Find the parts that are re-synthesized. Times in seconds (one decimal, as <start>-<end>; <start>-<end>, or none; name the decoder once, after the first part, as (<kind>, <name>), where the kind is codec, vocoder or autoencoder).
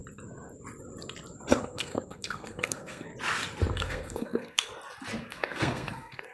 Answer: 1.6-3.1 (codec, SNAC); 3.7-4.7; 5.2-6.3